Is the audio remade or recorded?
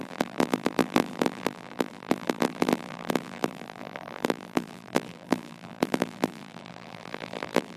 remade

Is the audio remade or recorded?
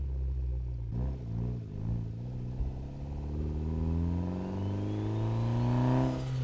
recorded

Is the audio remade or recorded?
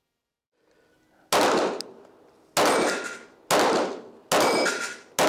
recorded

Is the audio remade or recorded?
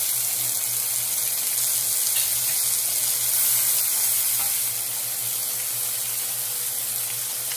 recorded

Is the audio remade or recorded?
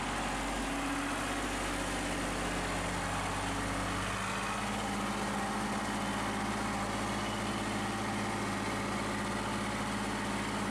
recorded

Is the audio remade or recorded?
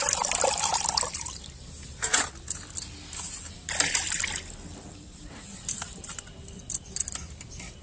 remade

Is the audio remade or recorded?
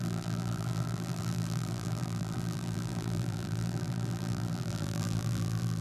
remade